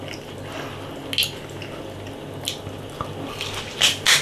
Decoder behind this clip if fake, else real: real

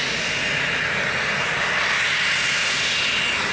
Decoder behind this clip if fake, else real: real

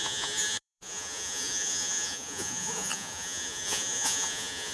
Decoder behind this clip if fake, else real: fake, vocoder, Vocos